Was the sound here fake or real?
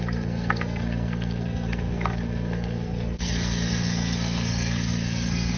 fake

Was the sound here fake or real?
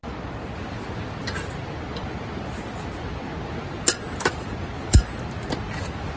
real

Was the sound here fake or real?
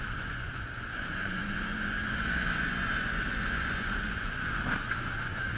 fake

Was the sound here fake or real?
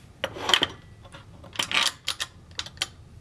real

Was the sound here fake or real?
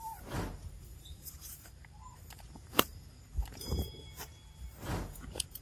fake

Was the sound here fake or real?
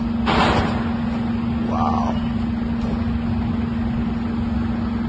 real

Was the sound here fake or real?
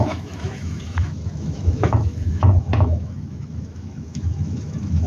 fake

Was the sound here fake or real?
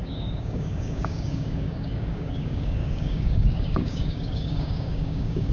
fake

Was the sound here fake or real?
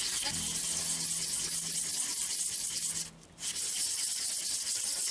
real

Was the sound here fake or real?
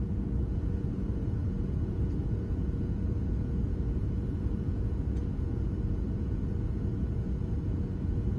fake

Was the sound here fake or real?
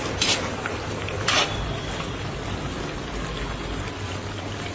real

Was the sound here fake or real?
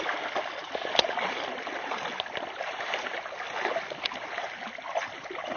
real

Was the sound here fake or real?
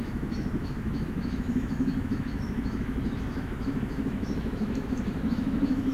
fake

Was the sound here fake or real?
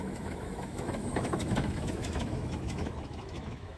fake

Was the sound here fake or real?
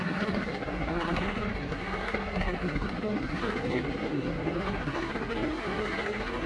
fake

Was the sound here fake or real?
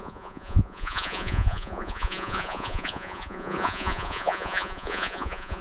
fake